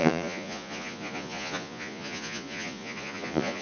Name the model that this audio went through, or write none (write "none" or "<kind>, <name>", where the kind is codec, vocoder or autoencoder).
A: vocoder, Vocos